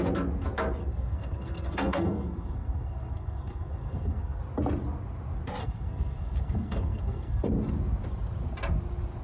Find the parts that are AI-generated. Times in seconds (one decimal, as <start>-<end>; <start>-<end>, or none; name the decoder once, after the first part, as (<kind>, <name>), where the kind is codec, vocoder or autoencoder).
0.8-4.4 (codec, SNAC); 5.6-7.5